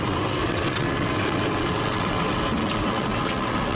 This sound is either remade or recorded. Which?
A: remade